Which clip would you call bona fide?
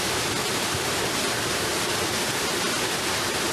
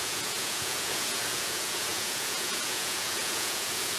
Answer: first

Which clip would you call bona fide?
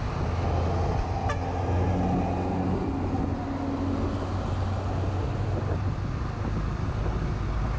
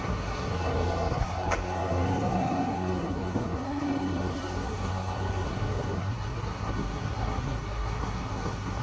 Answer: first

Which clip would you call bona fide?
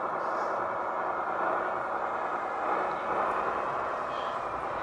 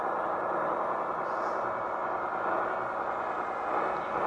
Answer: second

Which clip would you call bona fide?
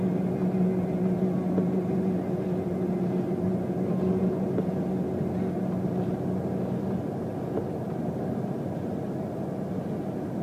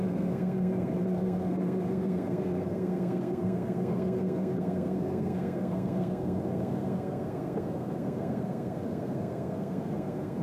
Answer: first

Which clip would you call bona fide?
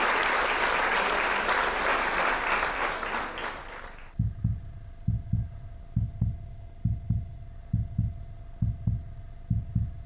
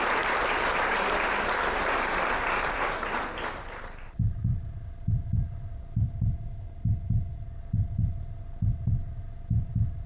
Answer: first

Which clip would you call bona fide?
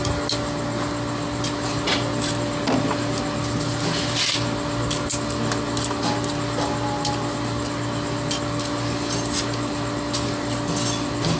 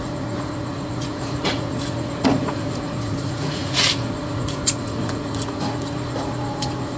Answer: first